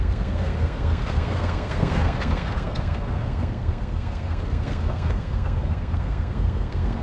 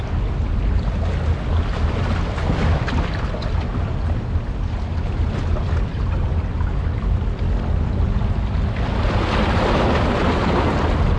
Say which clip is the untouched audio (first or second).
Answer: second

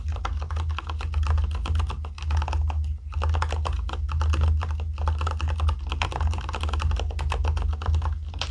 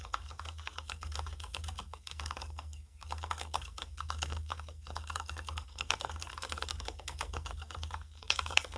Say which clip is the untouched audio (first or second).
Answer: first